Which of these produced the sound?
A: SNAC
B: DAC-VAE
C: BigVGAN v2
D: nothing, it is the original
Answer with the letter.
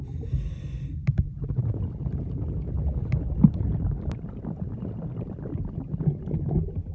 D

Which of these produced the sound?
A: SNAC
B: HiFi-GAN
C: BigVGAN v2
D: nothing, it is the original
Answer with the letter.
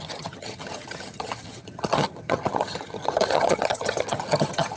B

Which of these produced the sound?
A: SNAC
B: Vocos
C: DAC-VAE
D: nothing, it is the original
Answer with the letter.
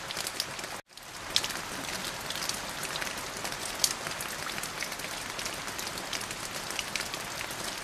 D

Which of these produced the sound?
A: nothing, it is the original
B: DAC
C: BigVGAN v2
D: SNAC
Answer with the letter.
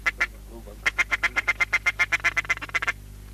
A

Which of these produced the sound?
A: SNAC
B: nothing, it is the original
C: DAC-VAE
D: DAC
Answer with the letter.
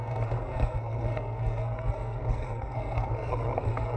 A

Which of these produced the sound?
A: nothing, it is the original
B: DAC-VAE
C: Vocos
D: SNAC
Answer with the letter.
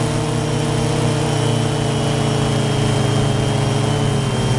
A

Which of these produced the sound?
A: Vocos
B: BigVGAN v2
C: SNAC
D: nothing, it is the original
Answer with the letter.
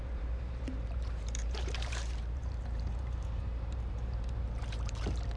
B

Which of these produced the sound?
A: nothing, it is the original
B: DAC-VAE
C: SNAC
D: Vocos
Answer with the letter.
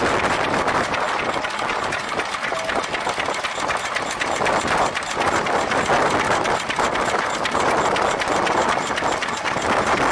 A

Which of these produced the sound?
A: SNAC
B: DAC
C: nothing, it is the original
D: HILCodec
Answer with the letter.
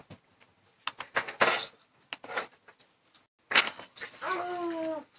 C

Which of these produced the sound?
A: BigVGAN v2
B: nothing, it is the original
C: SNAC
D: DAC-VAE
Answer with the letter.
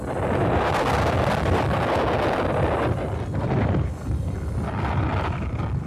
B